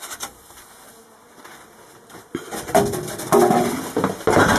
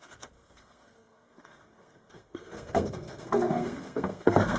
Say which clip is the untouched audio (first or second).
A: first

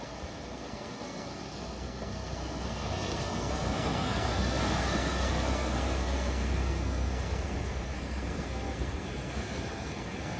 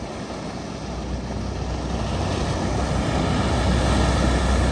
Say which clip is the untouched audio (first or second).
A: second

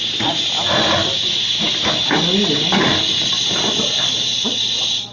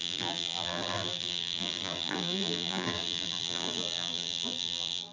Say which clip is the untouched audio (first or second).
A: first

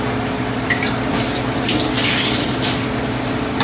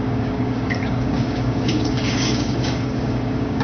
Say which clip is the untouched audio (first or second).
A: first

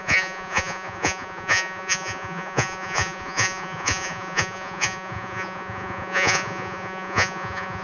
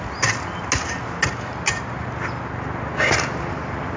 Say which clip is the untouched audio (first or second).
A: second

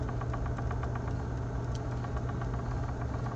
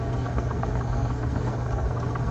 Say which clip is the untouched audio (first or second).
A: first